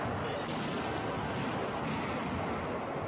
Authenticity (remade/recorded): recorded